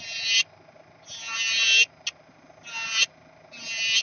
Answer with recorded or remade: recorded